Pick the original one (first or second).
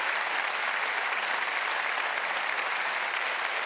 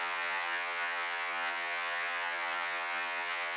first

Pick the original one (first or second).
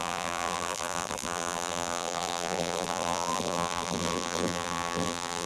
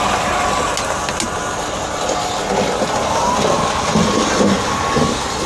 second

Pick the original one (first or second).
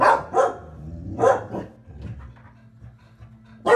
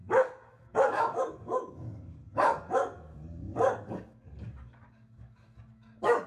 first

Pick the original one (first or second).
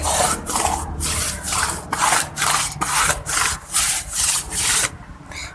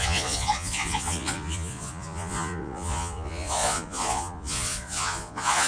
first